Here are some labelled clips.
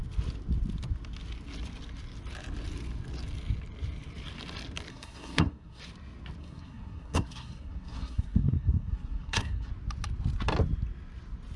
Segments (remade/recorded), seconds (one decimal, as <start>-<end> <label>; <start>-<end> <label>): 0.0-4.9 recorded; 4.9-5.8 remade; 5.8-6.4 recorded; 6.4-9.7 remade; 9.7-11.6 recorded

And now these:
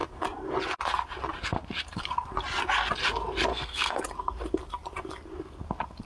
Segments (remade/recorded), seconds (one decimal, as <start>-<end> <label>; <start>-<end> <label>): 0.0-3.5 recorded; 3.5-4.0 remade; 4.0-6.1 recorded

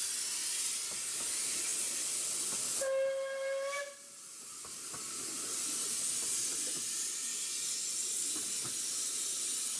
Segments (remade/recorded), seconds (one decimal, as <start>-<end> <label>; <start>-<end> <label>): 0.0-9.8 recorded